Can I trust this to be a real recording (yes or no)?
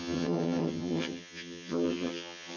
no